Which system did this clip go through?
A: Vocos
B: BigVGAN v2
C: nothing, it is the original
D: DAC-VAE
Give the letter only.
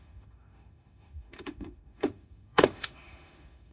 D